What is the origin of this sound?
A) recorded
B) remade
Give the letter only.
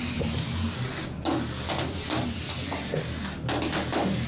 A